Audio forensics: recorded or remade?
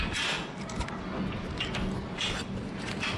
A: recorded